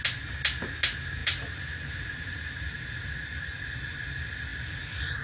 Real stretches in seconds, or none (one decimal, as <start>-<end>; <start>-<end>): 0.0-5.2